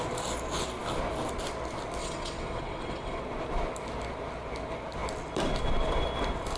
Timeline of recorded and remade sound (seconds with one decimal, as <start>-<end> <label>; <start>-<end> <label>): 0.0-2.0 recorded; 2.0-3.2 remade; 3.2-6.6 recorded